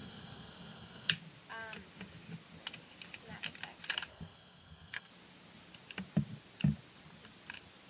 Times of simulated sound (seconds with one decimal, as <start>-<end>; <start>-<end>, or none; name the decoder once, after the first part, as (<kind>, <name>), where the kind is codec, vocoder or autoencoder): 0.0-1.1 (codec, SNAC); 4.1-5.1